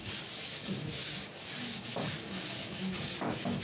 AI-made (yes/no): yes